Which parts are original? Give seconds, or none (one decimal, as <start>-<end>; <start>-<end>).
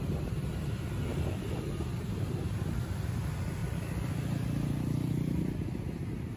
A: 0.0-1.1; 1.6-6.4